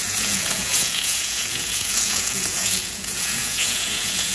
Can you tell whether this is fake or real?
fake